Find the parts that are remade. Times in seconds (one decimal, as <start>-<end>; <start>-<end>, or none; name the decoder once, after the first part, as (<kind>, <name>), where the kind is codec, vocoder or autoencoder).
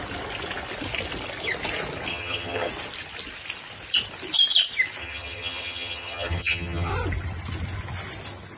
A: 2.1-2.7 (vocoder, HiFi-GAN); 5.0-6.9